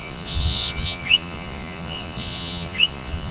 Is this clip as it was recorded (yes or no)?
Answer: no